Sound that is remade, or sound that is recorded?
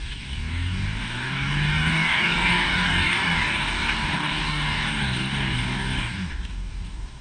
remade